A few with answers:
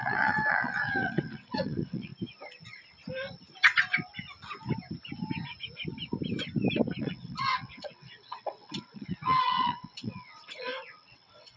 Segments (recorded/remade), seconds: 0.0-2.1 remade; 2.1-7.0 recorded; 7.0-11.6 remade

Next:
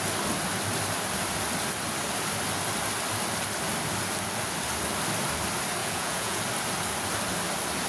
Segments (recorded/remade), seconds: 0.0-5.8 recorded; 5.8-6.4 remade; 6.4-7.9 recorded

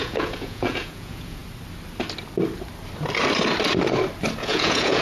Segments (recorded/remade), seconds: 0.0-1.4 remade; 1.4-4.4 recorded; 4.4-5.0 remade

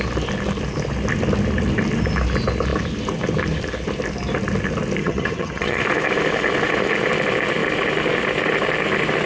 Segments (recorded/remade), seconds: 0.0-5.0 recorded; 5.0-5.8 remade; 5.8-9.3 recorded

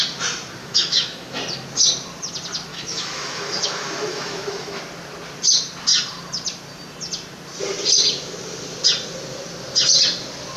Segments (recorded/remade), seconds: 0.0-0.6 recorded; 0.6-1.4 remade; 1.4-2.7 recorded; 2.7-4.8 remade; 4.8-10.6 recorded

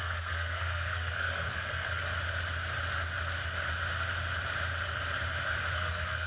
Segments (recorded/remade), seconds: 0.0-2.0 remade; 2.0-5.7 recorded; 5.7-6.3 remade

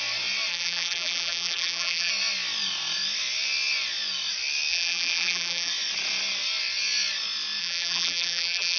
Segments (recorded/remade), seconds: 0.0-0.5 recorded; 0.5-2.1 remade; 2.1-4.7 recorded; 4.7-5.7 remade; 5.7-7.6 recorded; 7.6-8.8 remade